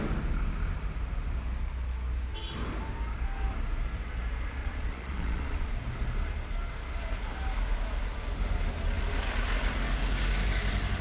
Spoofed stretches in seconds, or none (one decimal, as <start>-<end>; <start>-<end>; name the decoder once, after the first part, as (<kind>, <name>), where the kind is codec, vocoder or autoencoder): 4.6-5.7 (vocoder, Vocos)